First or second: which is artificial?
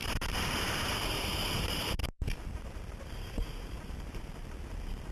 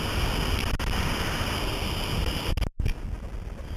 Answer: first